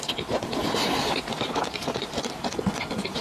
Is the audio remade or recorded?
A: recorded